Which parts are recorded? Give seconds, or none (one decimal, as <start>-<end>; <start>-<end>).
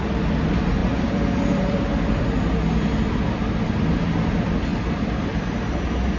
0.0-0.8; 2.5-4.7; 5.8-6.2